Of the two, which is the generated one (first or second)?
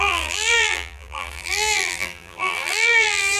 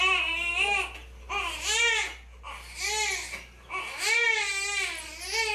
first